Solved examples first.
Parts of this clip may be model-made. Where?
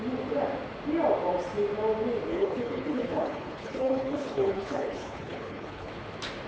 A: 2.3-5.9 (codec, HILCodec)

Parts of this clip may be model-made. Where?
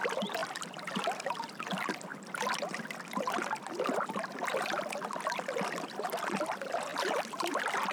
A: 0.4-1.6 (vocoder, BigVGAN v2); 2.1-6.5; 6.9-7.5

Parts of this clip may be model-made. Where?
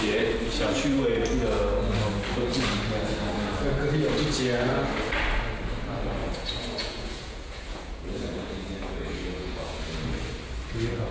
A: 6.2-9.8 (vocoder, Vocos)